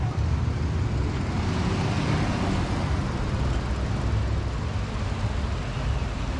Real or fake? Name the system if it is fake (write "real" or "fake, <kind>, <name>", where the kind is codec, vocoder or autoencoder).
real